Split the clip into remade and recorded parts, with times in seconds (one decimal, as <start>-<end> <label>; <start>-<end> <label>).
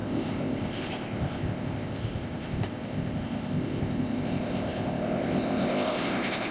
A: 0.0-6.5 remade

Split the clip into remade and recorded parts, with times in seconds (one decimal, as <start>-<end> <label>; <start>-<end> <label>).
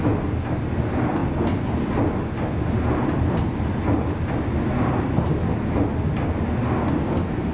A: 0.0-7.5 recorded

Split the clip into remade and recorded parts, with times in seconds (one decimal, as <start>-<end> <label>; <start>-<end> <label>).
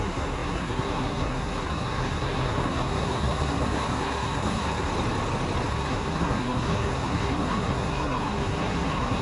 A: 0.0-4.9 remade; 4.9-5.7 recorded; 5.7-9.2 remade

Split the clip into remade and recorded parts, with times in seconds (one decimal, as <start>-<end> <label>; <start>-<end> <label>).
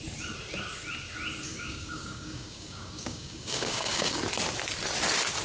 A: 0.0-1.5 recorded; 1.5-4.2 remade; 4.2-5.4 recorded